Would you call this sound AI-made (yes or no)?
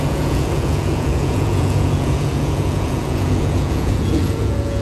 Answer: yes